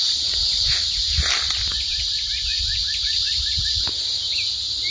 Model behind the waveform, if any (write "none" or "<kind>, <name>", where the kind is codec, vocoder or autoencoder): none